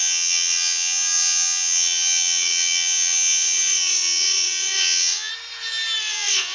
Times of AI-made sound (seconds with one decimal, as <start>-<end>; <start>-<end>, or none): 0.0-5.3; 6.0-6.5